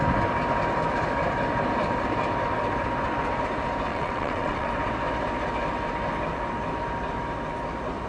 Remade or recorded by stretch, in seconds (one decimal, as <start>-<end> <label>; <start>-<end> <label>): 0.0-3.9 recorded; 3.9-4.7 remade; 4.7-8.1 recorded